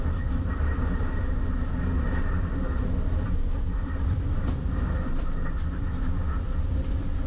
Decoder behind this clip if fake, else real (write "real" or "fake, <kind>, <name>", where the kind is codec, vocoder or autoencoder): fake, vocoder, BigVGAN v2